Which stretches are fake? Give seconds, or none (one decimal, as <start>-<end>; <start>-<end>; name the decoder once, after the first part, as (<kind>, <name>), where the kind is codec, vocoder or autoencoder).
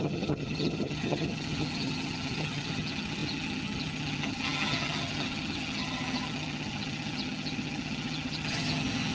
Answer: 0.0-9.1 (vocoder, HiFi-GAN)